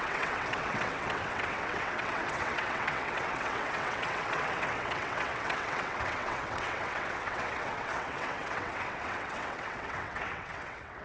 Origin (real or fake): fake